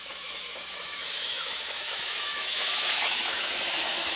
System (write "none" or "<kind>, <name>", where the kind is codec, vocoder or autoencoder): autoencoder, DAC-VAE